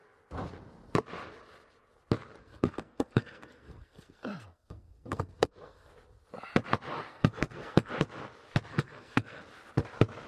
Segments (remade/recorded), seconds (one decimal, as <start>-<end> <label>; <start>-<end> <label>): 0.0-2.4 recorded; 2.4-5.9 remade; 5.9-7.1 recorded; 7.1-7.9 remade; 7.9-8.7 recorded; 8.7-9.4 remade; 9.4-10.3 recorded